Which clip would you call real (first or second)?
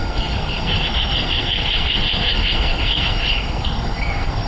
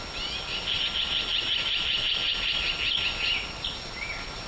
second